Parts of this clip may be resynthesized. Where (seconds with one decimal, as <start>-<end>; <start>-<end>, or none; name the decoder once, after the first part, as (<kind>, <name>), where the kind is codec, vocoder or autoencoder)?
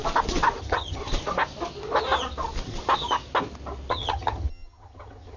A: 0.6-1.0 (vocoder, HiFi-GAN); 3.9-5.4